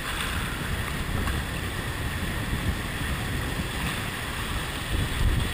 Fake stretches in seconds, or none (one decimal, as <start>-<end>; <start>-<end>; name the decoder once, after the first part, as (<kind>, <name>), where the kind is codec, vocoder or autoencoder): none